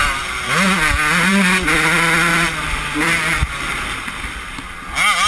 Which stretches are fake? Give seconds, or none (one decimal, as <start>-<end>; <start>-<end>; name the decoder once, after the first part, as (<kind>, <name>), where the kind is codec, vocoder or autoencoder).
2.3-4.0 (vocoder, BigVGAN v2)